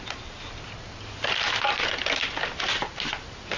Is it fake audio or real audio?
real